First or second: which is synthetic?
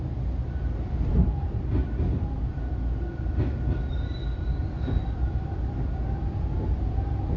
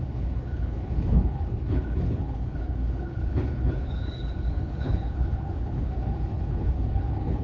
second